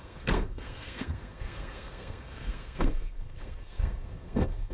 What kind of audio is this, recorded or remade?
remade